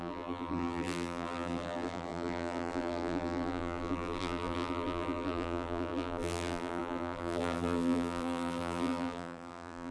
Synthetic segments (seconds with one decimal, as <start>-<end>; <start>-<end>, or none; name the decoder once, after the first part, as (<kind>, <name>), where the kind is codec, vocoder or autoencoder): 0.0-9.9 (vocoder, BigVGAN v2)